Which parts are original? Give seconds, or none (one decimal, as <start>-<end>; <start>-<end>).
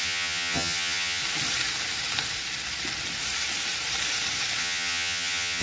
1.2-4.6